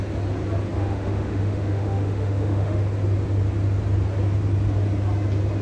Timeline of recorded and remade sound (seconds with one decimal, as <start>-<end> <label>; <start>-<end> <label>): 0.0-0.8 recorded; 0.8-2.8 remade; 2.8-5.6 recorded